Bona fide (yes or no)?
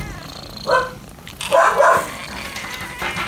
yes